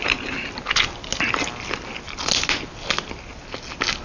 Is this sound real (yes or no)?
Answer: yes